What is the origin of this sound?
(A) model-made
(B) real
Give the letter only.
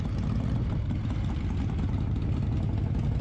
B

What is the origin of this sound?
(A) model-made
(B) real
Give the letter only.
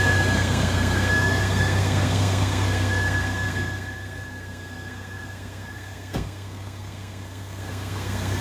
A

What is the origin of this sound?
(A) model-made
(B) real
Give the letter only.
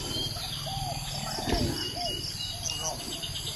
B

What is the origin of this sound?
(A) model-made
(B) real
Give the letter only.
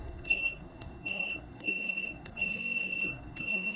A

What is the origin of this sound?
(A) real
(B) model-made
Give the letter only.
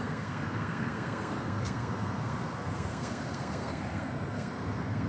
B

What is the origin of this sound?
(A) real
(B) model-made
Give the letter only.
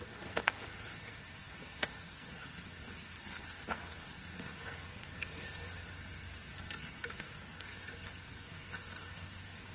B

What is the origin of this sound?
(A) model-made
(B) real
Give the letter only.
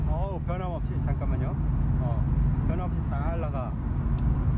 B